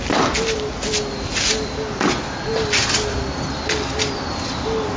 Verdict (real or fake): real